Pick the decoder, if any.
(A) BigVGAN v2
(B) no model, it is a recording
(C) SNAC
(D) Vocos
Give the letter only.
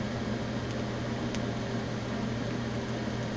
B